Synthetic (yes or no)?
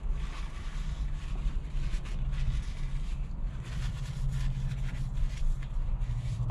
yes